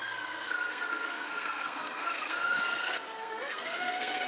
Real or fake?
fake